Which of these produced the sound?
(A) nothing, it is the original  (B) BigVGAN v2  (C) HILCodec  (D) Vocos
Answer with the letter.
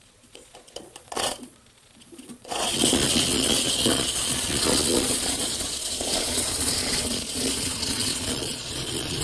D